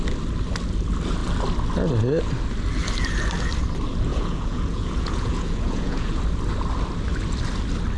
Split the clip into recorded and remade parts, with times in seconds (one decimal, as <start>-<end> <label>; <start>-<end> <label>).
0.0-4.1 recorded; 4.1-6.2 remade; 6.2-8.0 recorded